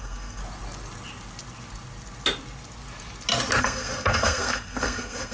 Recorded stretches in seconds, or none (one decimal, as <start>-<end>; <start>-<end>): 0.4-3.6